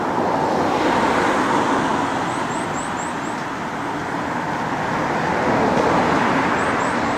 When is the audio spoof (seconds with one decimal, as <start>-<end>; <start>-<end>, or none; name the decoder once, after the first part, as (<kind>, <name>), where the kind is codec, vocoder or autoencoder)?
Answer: none